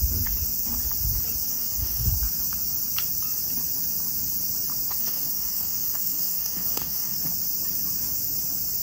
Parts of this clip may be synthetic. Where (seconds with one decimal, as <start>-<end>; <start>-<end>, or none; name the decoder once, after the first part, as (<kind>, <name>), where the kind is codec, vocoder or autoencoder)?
1.5-2.1 (codec, DAC); 5.0-7.2